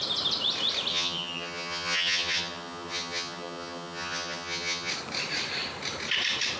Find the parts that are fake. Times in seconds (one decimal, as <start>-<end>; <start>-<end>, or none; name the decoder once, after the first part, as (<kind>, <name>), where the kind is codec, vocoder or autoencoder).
0.9-4.9 (vocoder, HiFi-GAN)